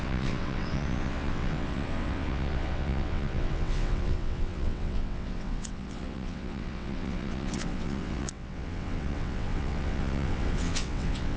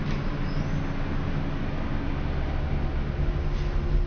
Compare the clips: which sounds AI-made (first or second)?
first